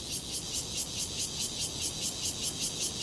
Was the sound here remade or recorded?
recorded